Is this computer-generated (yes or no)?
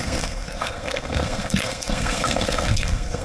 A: yes